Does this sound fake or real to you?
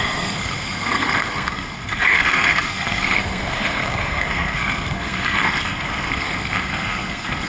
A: fake